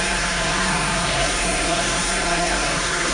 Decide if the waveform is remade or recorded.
remade